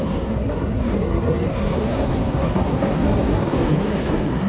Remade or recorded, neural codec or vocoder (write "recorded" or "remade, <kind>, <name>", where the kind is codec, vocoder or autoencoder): remade, codec, SNAC